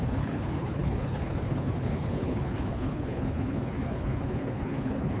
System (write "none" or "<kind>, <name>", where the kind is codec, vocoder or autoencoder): codec, HILCodec